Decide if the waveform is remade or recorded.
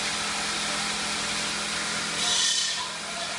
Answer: recorded